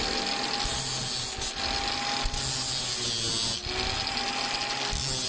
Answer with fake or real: real